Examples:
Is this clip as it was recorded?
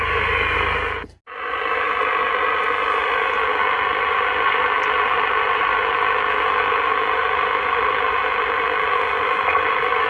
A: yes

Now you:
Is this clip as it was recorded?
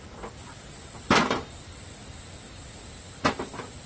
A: yes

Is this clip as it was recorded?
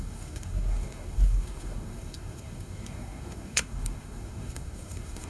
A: no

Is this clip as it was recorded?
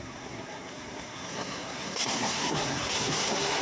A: no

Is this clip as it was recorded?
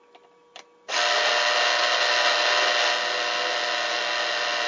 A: yes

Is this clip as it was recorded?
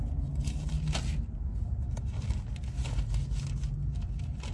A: yes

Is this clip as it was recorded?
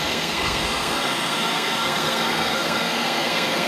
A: no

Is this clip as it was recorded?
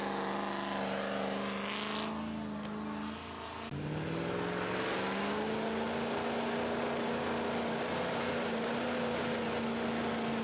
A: yes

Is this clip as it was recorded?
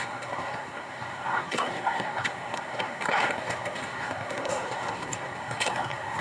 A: no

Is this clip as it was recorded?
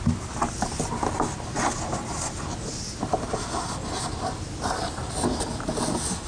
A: yes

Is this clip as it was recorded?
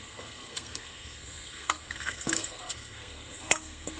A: no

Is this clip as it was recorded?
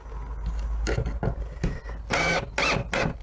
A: yes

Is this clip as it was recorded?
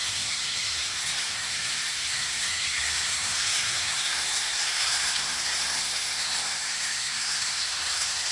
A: no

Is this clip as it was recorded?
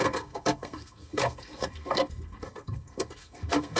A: no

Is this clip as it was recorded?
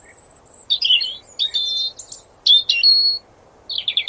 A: yes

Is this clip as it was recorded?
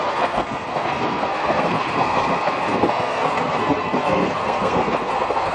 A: no